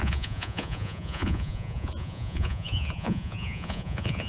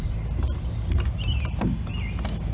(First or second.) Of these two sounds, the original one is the second